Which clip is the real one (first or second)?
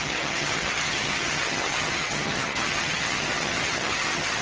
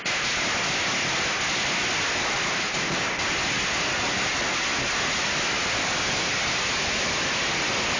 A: second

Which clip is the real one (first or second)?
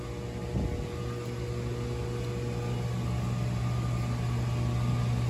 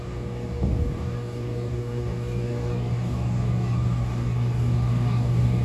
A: first